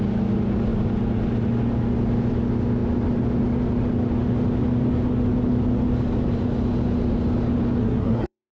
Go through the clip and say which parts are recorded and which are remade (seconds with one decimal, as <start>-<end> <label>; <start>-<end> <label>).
0.0-7.8 recorded; 7.8-8.5 remade